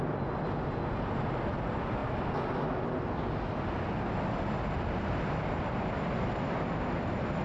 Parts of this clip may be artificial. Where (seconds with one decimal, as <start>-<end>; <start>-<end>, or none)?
none